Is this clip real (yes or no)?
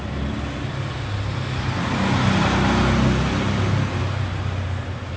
yes